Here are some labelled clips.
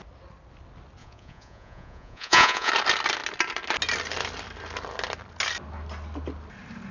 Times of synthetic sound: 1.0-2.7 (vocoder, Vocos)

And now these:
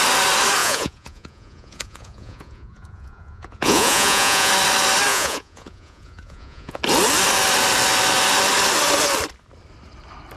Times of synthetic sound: 0.6-4.5 (vocoder, Vocos); 5.1-6.8